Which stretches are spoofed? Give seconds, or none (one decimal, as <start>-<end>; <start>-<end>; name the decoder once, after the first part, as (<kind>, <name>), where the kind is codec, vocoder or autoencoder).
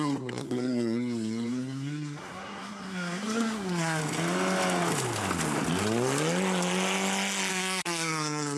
0.0-4.0 (codec, SNAC); 7.5-8.6